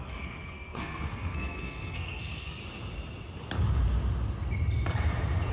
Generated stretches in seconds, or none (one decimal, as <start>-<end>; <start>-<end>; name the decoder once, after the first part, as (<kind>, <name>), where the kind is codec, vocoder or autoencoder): 0.0-2.6 (codec, SNAC)